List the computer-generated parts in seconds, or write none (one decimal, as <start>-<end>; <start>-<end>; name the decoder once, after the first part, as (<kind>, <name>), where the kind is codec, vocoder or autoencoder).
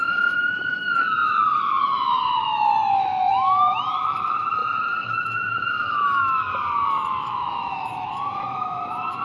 0.0-9.2 (autoencoder, DAC-VAE)